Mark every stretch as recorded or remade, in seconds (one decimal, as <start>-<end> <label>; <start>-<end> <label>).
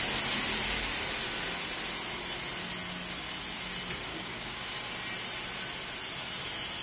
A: 0.0-4.1 recorded; 4.1-4.7 remade; 4.7-6.8 recorded